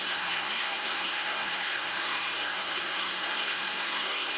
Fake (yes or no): yes